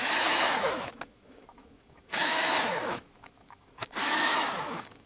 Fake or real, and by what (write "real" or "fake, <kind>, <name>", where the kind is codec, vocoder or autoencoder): fake, autoencoder, DAC-VAE